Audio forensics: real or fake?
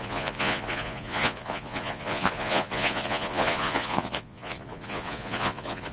fake